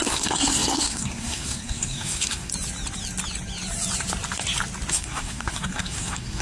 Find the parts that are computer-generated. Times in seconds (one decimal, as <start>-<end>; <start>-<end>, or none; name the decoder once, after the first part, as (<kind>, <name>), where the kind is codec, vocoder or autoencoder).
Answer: 0.0-2.5 (codec, SNAC); 4.9-6.4